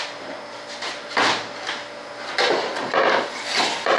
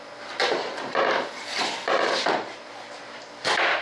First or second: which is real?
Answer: first